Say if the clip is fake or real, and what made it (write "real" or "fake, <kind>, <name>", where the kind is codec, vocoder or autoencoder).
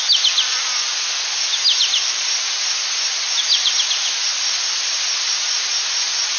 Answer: real